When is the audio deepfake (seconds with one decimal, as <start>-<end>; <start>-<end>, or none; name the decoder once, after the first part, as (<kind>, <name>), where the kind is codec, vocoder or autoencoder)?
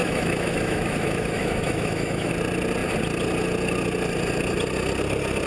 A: 0.0-2.3 (autoencoder, DAC-VAE)